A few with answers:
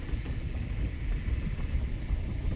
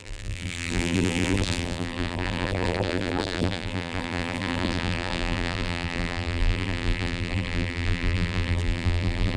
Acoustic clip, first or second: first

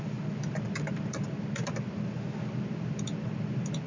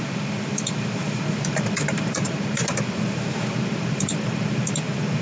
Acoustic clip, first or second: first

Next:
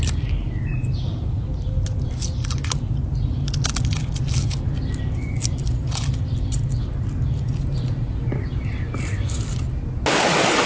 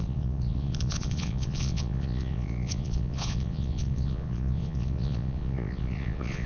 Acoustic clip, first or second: first